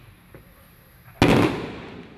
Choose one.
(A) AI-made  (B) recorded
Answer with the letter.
B